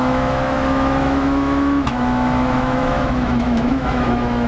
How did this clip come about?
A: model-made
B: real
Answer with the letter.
A